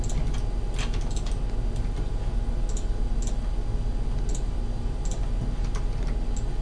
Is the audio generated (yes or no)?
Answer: no